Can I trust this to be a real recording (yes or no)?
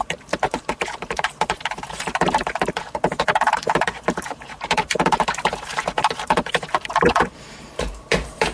no